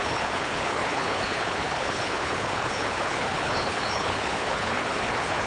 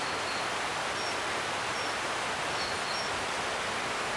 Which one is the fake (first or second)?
first